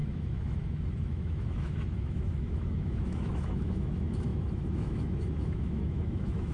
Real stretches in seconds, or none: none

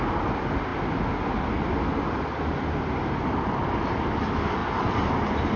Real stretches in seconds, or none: 0.0-5.6

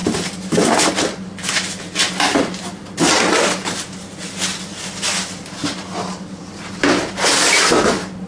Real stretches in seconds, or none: 0.0-8.3

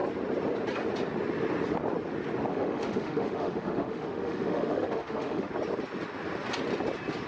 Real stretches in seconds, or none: 0.0-2.5; 5.5-7.3

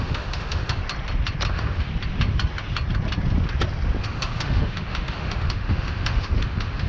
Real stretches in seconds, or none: 0.8-1.5; 1.9-4.0

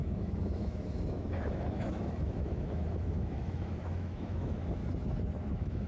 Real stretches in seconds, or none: 4.8-5.5

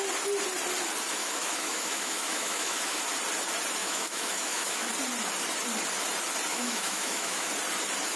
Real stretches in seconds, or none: 0.0-1.2; 3.0-3.8; 4.9-6.5; 7.5-8.2